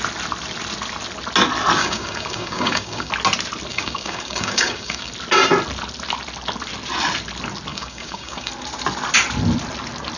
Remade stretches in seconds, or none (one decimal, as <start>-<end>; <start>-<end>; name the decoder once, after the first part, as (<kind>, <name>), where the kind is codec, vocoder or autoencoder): 1.8-3.1 (codec, DAC); 3.7-5.1; 7.7-8.5